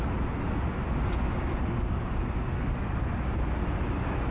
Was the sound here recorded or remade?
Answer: recorded